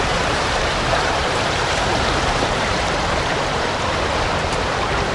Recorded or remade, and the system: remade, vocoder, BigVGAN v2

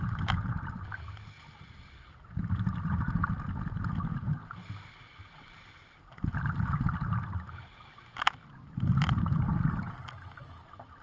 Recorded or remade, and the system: recorded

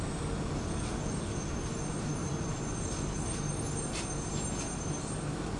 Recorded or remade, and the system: recorded